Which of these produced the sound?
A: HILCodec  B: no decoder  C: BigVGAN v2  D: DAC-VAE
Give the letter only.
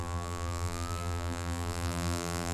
C